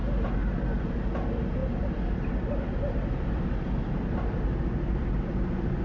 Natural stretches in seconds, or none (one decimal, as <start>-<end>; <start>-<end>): 0.0-5.8